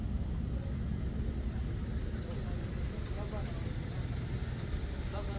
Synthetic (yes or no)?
no